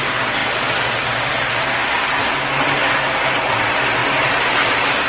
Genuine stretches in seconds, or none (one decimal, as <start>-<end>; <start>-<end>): 0.0-5.1